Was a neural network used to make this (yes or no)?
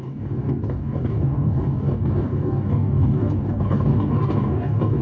yes